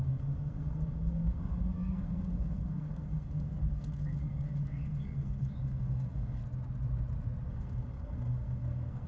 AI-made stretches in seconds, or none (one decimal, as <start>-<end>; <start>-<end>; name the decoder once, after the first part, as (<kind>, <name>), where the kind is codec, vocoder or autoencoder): 0.0-6.4 (codec, SNAC); 7.5-9.1